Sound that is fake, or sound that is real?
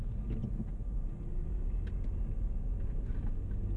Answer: real